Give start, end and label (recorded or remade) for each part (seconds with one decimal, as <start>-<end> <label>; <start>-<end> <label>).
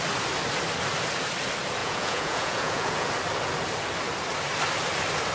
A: 0.0-1.8 recorded; 1.8-3.1 remade; 3.1-5.3 recorded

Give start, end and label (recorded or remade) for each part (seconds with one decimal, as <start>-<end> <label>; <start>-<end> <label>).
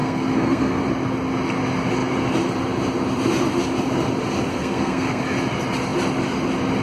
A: 0.0-0.8 remade; 0.8-4.5 recorded; 4.5-5.2 remade; 5.2-6.8 recorded